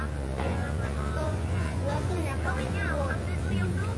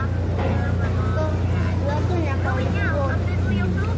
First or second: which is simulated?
first